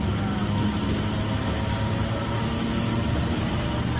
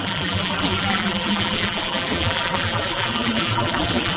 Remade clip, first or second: second